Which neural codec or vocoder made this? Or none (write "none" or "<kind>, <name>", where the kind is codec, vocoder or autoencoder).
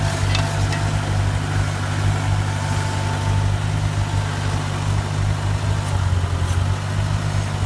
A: none